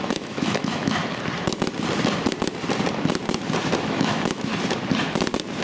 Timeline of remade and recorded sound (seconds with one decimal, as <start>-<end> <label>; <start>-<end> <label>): 0.0-1.0 remade; 1.0-3.8 recorded; 3.8-4.5 remade; 4.5-5.6 recorded